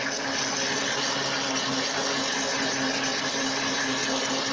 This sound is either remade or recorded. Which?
recorded